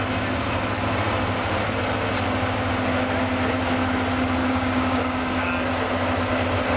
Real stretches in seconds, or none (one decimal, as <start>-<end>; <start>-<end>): 0.0-4.4; 5.5-6.8